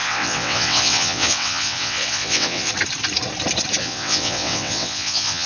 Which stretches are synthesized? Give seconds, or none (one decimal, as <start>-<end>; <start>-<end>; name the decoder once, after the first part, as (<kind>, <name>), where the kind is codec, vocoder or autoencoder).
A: 0.0-2.7 (vocoder, WaveNeXt); 3.8-5.5